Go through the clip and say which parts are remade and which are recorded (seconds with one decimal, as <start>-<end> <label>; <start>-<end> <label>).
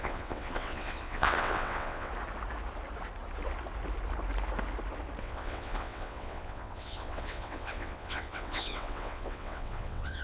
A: 0.0-2.1 remade; 2.1-5.2 recorded; 5.2-10.2 remade